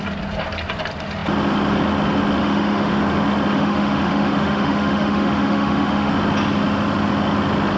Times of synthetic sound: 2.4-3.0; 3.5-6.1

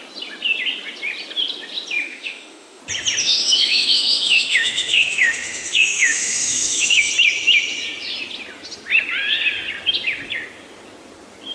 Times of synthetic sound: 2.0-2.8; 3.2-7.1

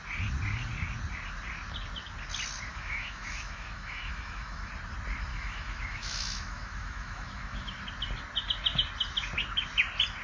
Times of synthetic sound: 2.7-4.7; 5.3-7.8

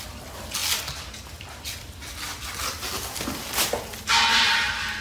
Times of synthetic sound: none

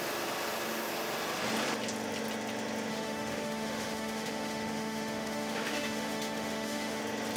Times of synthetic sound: 2.9-7.0

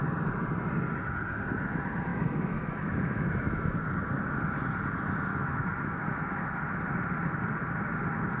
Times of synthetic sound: 2.1-3.8; 5.3-6.8